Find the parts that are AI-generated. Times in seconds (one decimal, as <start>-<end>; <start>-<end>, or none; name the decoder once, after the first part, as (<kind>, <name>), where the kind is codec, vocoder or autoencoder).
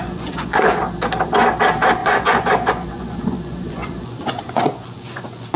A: 0.0-0.8 (vocoder, Vocos); 2.0-5.6